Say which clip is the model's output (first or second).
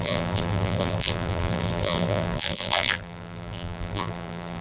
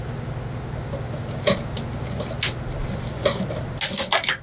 first